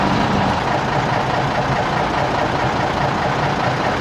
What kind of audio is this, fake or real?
real